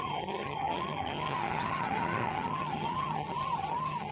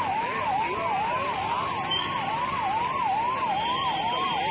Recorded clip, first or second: second